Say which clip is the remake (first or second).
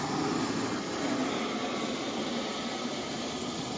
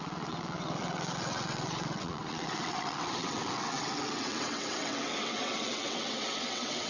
second